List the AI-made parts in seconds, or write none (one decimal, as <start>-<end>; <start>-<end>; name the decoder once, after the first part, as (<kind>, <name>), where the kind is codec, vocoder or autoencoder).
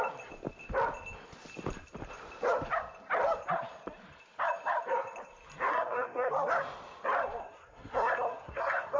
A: 5.7-6.3 (codec, SNAC); 7.4-9.0